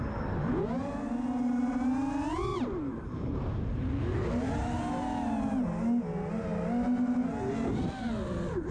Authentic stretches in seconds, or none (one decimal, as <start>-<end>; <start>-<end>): 0.0-2.5; 3.6-8.7